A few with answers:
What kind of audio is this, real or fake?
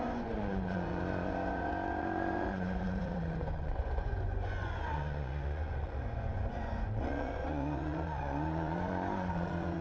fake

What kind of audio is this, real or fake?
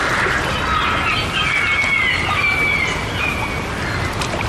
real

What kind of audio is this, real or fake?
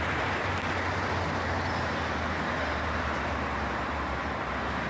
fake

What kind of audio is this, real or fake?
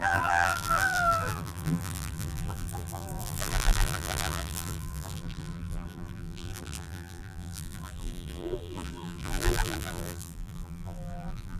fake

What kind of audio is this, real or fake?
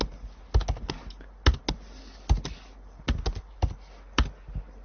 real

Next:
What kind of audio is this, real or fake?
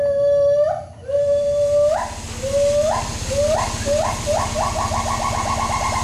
real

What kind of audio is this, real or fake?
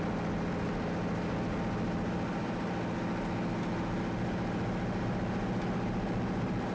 real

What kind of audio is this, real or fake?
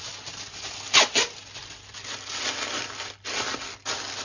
real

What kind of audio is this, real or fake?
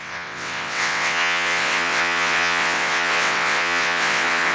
fake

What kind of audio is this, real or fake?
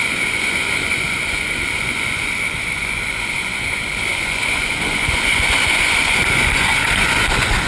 fake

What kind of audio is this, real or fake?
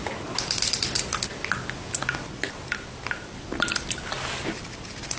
real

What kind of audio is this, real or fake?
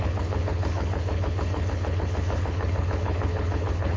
fake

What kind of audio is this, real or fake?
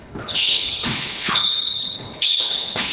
fake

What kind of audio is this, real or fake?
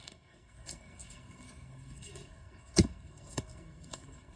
fake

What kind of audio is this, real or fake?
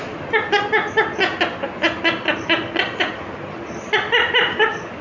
real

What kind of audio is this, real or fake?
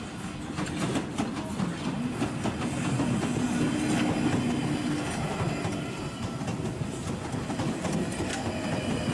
real